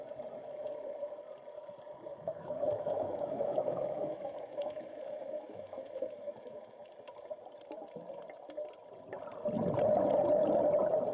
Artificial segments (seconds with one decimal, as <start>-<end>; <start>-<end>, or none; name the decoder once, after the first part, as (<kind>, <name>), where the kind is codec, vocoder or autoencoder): 2.1-6.9 (autoencoder, DAC-VAE)